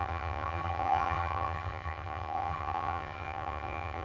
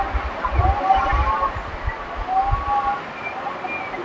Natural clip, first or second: second